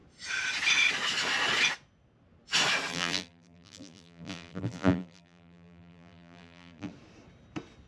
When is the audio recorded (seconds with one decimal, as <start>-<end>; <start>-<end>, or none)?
0.0-2.9; 6.9-7.9